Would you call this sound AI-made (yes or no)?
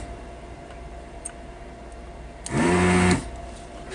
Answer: no